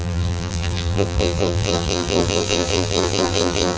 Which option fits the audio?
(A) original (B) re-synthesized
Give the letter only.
B